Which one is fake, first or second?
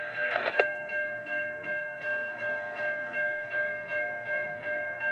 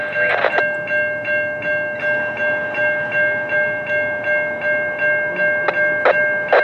first